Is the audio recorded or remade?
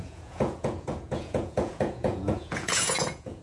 remade